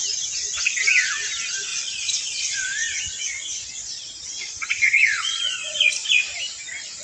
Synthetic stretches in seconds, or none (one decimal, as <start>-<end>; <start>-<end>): 1.7-5.9